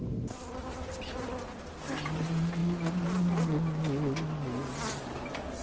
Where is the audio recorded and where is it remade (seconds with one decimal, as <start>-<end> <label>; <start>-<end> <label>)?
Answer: 0.0-5.6 recorded